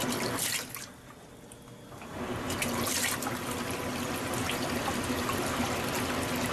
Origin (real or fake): real